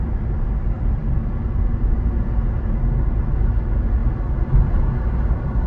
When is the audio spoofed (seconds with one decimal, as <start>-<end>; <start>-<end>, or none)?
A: none